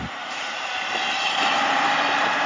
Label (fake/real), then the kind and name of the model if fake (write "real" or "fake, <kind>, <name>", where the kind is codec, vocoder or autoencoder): fake, vocoder, BigVGAN v2